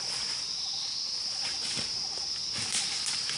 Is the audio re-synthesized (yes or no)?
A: no